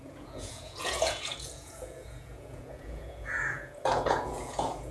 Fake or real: fake